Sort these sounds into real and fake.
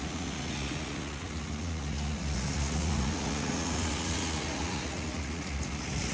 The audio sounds fake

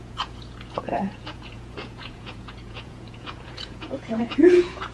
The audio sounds fake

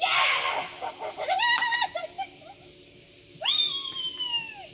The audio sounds real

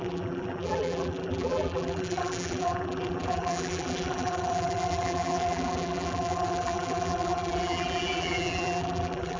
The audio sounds fake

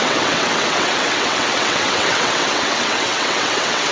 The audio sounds fake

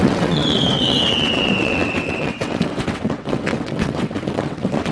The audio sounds fake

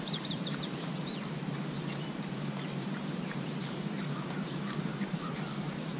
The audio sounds fake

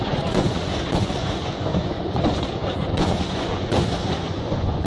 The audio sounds fake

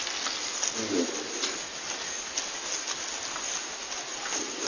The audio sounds real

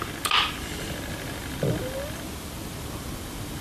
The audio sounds real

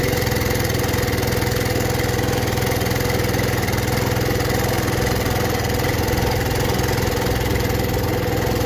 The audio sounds real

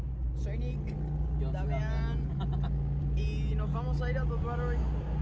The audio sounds real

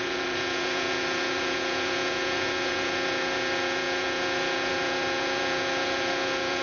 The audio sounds fake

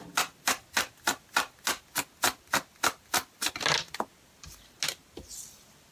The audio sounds real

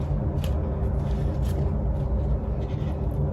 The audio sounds real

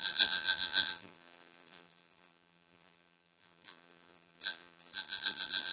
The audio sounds fake